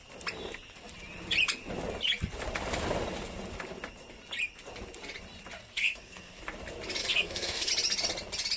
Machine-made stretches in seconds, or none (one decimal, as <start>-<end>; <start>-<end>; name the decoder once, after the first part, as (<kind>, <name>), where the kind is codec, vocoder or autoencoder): 5.6-6.4 (codec, SNAC); 7.0-7.7